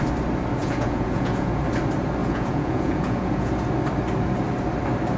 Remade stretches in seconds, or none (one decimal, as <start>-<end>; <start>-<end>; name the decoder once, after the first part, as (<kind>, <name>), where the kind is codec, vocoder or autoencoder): 0.6-1.6 (vocoder, Vocos); 2.2-3.5